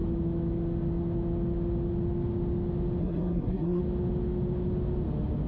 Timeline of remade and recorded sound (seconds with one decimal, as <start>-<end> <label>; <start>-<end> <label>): 0.0-3.0 recorded; 3.0-3.8 remade; 3.8-5.5 recorded